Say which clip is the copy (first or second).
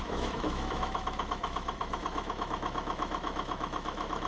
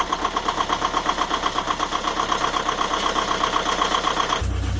first